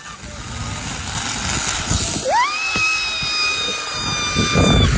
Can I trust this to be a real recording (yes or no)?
yes